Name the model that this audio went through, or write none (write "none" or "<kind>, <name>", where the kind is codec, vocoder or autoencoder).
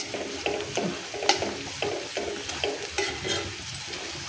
none